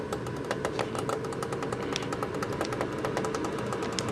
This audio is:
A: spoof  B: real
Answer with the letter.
B